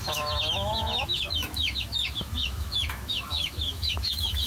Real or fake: fake